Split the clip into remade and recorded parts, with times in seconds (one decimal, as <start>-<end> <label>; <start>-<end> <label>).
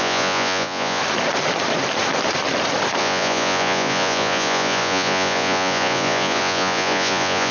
0.0-1.0 remade; 1.0-3.0 recorded; 3.0-7.5 remade